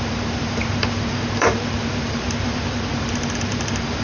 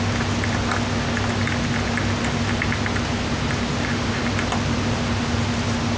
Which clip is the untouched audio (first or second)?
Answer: second